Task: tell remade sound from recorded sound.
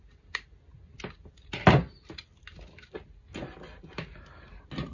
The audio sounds recorded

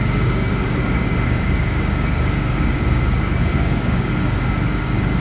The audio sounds remade